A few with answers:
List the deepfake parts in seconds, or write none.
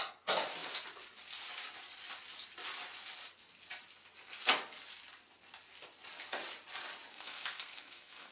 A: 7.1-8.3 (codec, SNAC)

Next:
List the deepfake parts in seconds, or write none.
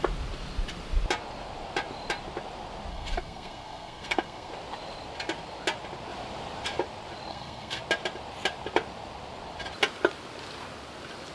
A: 2.9-4.5 (codec, SNAC); 7.3-7.8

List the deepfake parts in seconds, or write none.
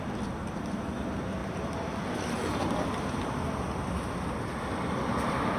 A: none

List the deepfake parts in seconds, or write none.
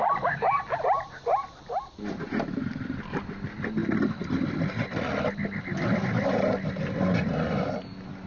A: none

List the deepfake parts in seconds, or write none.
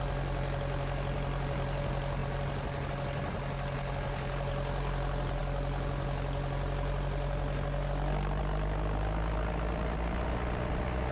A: none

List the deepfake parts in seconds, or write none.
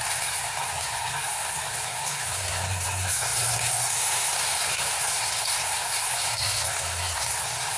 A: 0.0-7.8 (codec, SNAC)